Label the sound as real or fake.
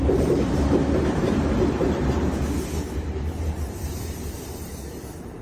fake